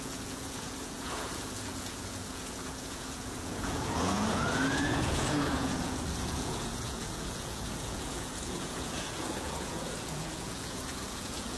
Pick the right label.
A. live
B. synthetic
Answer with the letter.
B